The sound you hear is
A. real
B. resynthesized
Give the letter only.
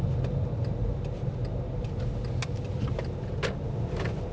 A